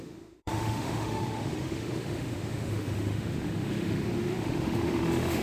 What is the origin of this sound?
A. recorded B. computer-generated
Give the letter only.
B